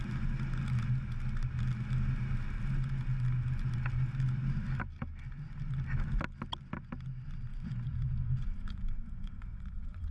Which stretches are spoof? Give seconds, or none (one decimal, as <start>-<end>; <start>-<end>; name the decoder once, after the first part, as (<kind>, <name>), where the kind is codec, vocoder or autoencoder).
7.5-10.1 (vocoder, Vocos)